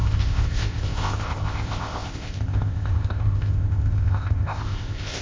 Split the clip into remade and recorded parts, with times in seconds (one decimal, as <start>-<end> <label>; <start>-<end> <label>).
0.0-5.2 remade

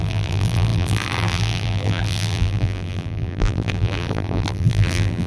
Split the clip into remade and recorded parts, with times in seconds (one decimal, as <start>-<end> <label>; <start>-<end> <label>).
0.0-5.3 remade

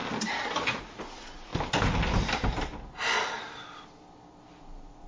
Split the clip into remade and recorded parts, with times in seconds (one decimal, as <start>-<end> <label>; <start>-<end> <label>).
0.0-0.8 recorded; 0.8-1.5 remade; 1.5-4.6 recorded; 4.6-5.1 remade

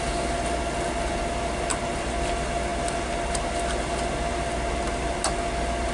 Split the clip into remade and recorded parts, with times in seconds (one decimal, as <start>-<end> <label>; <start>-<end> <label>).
0.0-5.9 recorded